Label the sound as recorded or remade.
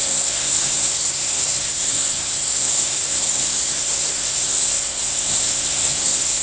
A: remade